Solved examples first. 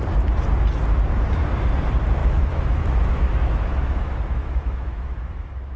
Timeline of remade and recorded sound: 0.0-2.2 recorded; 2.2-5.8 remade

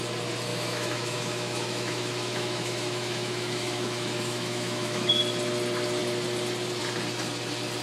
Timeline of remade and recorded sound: 0.0-0.5 recorded; 0.5-5.1 remade; 5.1-7.8 recorded